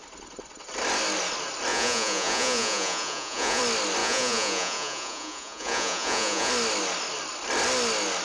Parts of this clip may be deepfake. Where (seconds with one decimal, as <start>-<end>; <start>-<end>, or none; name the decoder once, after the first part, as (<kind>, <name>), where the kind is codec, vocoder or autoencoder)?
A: 1.7-3.6 (vocoder, Vocos); 4.0-6.5